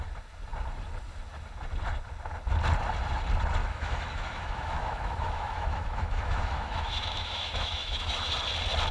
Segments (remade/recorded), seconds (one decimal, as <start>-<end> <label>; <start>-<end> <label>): 0.0-3.6 recorded; 3.6-8.3 remade; 8.3-8.9 recorded